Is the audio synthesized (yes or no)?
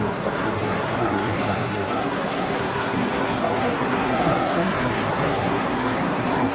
yes